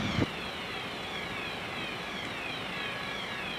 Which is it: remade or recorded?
recorded